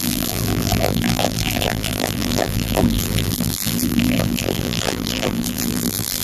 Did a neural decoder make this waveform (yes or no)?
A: yes